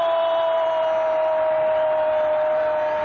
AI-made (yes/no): no